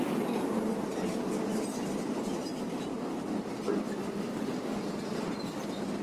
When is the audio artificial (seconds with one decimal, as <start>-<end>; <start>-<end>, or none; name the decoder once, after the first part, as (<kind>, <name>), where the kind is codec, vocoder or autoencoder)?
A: none